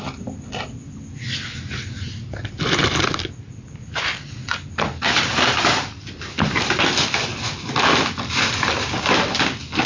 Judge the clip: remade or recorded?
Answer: recorded